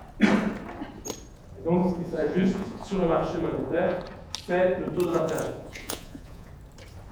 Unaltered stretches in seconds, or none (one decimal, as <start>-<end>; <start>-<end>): 0.0-1.8; 4.0-5.1; 6.5-7.1

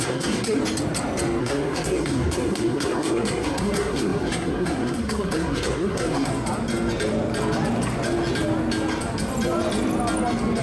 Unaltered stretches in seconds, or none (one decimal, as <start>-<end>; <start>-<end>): 0.6-1.4; 6.3-10.6

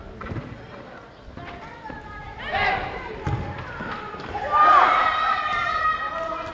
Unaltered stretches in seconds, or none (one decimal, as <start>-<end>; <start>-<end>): 0.7-2.2; 4.2-5.0; 5.8-6.5

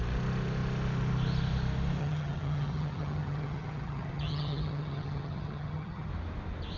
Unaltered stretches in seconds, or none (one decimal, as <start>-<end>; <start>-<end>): 0.0-2.0; 6.1-6.8

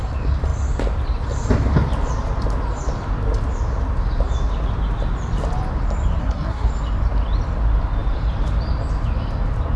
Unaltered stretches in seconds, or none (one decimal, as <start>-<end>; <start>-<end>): 0.0-6.2; 6.7-9.8

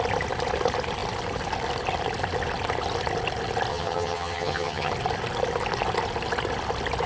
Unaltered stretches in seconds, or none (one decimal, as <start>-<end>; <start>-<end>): 0.0-3.7; 4.9-7.1

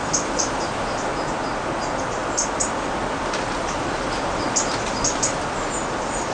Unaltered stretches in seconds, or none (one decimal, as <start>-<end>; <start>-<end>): 0.0-6.3